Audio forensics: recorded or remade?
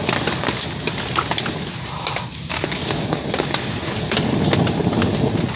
recorded